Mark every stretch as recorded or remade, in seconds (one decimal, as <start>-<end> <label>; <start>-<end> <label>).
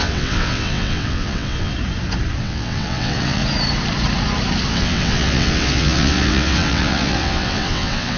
0.0-1.7 remade; 1.7-2.4 recorded; 2.4-3.4 remade; 3.4-4.7 recorded; 4.7-8.2 remade